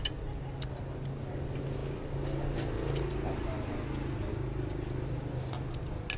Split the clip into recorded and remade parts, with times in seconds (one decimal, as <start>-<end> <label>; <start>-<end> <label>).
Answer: 0.0-6.2 recorded

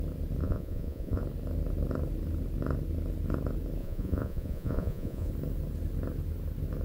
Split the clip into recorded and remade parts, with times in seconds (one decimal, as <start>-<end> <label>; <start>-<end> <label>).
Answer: 0.0-0.4 recorded; 0.4-1.2 remade; 1.2-3.8 recorded; 3.8-5.3 remade; 5.3-6.8 recorded

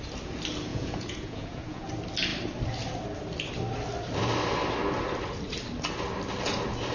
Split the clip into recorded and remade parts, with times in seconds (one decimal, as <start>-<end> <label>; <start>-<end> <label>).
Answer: 0.0-0.7 recorded; 0.7-1.9 remade; 1.9-6.9 recorded

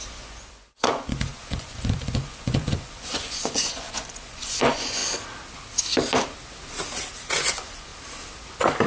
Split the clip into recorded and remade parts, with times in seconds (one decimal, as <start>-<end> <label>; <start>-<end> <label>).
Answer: 0.0-5.0 remade; 5.0-7.5 recorded; 7.5-7.9 remade; 7.9-8.9 recorded

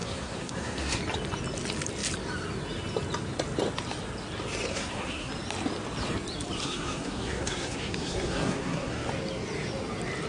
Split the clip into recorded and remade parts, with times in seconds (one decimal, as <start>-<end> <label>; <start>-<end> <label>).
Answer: 0.0-1.0 remade; 1.0-4.7 recorded; 4.7-5.3 remade; 5.3-6.6 recorded; 6.6-9.1 remade; 9.1-10.3 recorded

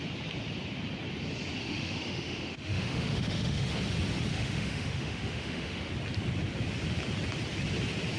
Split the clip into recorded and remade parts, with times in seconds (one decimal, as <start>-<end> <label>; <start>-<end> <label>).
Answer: 0.0-1.6 recorded; 1.6-3.7 remade; 3.7-4.3 recorded; 4.3-5.9 remade; 5.9-8.2 recorded

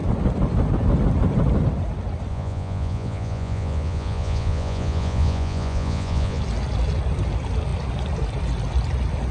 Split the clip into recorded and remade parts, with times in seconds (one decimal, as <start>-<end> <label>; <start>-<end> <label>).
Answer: 0.0-2.3 recorded; 2.3-6.4 remade; 6.4-9.3 recorded